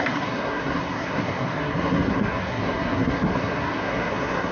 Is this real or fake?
fake